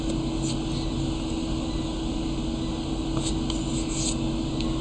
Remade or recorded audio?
recorded